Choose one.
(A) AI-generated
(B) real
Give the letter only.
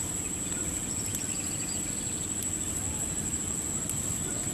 B